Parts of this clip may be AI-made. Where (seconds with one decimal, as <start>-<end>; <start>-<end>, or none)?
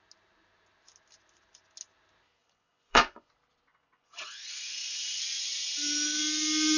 2.4-3.3; 3.7-5.2